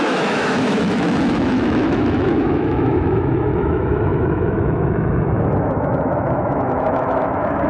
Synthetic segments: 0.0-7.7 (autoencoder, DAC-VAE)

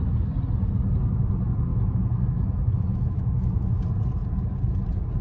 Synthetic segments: 1.7-3.8 (autoencoder, DAC-VAE)

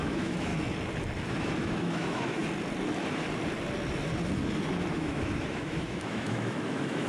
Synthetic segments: 0.0-0.5 (autoencoder, DAC-VAE); 1.3-2.4; 4.9-7.1

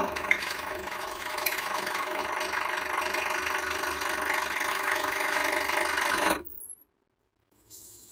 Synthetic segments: 0.0-2.2 (autoencoder, DAC-VAE); 4.7-5.4; 6.1-6.7; 7.4-8.1

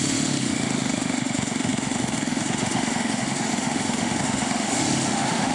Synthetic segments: 0.0-5.5 (autoencoder, DAC-VAE)

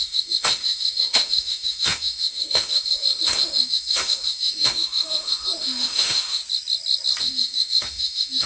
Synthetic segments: 0.0-6.4 (autoencoder, DAC-VAE); 7.2-8.5

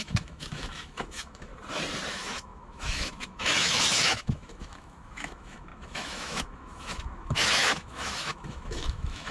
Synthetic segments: 0.0-1.5 (autoencoder, DAC-VAE); 2.1-9.3